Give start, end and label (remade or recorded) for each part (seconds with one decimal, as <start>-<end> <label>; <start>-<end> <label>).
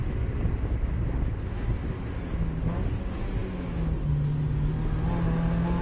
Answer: 0.0-5.8 recorded